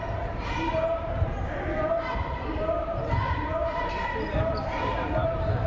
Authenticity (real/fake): fake